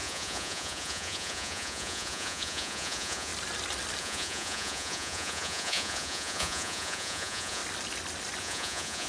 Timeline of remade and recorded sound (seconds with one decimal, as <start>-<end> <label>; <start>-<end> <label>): 0.0-3.3 remade; 3.3-4.0 recorded; 4.0-7.6 remade; 7.6-8.4 recorded; 8.4-9.1 remade